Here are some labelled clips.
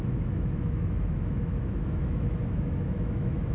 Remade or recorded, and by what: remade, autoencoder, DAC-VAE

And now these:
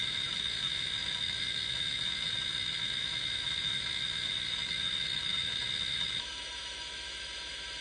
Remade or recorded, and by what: remade, autoencoder, DAC-VAE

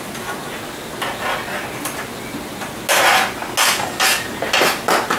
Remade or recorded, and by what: recorded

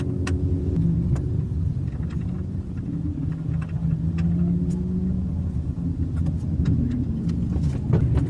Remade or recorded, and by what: recorded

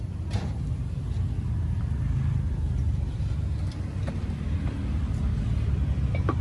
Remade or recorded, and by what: recorded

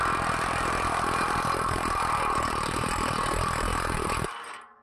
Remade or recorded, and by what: recorded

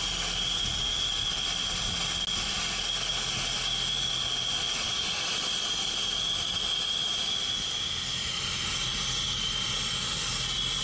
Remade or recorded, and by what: recorded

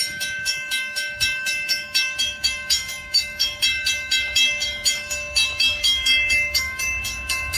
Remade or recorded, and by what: remade, autoencoder, DAC-VAE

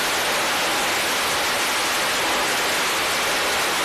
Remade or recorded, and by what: recorded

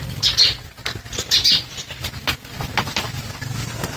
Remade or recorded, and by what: recorded